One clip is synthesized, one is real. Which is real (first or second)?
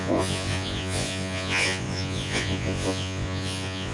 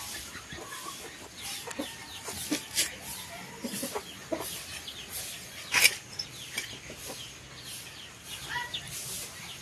second